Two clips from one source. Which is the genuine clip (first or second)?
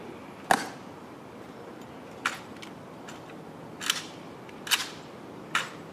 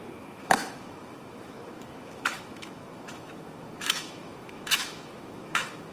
first